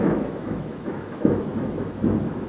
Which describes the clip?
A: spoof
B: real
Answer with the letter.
A